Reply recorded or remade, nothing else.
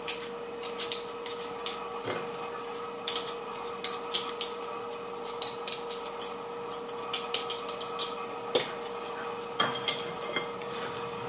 recorded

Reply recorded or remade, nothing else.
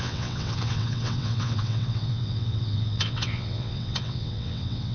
remade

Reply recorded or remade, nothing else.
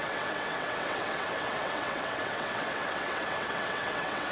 remade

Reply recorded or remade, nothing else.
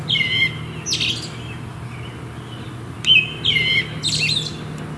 recorded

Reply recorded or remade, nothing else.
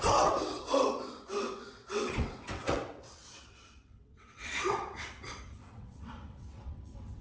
remade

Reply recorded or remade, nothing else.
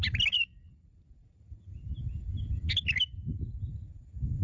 recorded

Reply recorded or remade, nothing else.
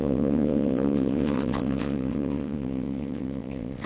remade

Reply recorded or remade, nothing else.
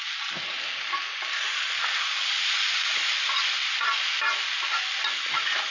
recorded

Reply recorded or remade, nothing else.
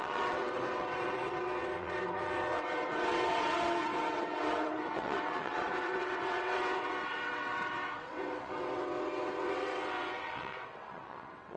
remade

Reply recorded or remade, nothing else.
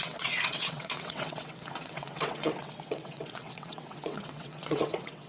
remade